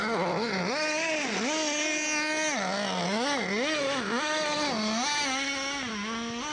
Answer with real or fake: real